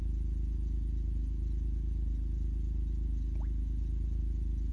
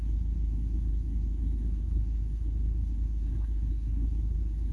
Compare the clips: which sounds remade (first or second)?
second